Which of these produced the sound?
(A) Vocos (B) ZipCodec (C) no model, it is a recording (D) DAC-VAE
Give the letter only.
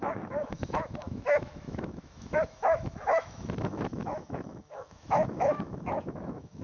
D